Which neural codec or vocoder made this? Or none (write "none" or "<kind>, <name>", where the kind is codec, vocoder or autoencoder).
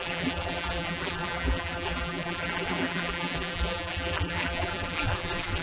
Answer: vocoder, BigVGAN v2